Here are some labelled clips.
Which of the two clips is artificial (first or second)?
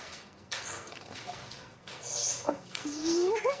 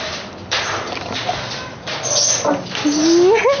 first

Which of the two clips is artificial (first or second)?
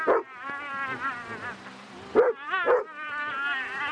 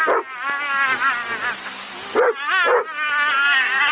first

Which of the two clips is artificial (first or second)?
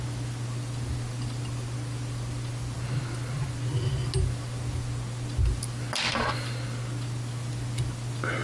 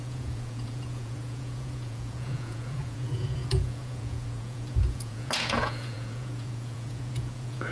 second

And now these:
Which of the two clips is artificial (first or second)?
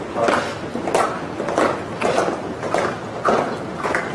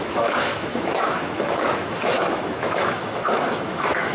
second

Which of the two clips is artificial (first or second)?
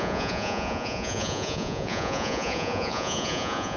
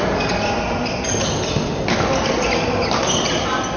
first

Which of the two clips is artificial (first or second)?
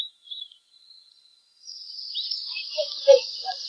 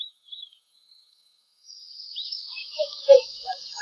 second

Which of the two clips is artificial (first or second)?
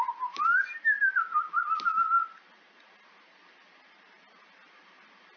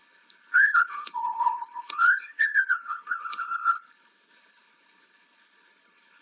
second